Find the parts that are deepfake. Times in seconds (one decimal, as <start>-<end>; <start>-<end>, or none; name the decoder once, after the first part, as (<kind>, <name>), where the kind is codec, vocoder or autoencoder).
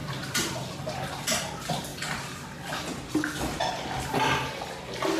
none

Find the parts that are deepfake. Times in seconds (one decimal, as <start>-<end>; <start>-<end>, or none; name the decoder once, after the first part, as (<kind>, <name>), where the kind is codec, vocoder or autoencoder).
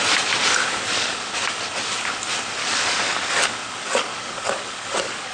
0.6-1.6 (codec, DAC); 2.6-5.3